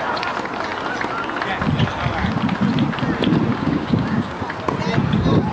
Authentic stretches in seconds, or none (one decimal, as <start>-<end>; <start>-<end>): 0.0-3.5; 4.4-5.5